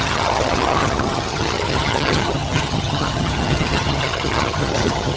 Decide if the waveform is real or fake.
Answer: fake